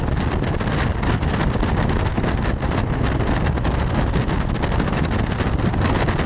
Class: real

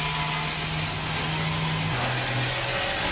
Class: real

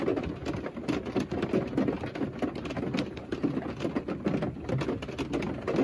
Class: real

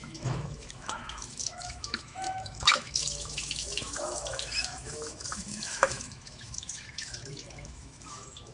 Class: fake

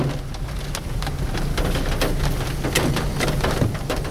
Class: real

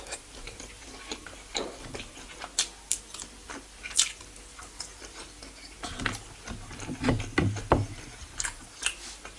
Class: real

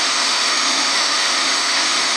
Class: fake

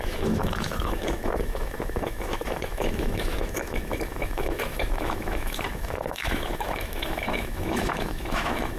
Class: fake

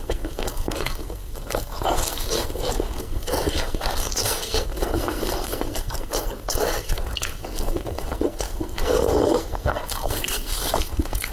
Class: fake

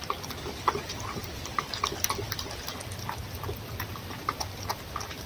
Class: real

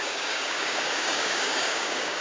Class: fake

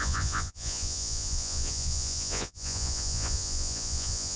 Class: fake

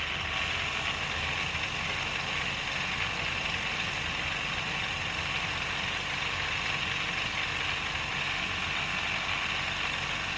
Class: real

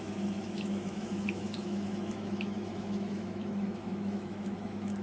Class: fake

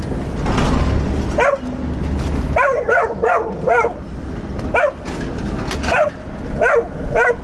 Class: real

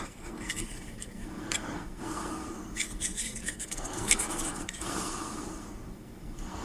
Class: fake